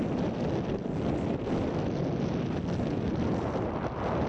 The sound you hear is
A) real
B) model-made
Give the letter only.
A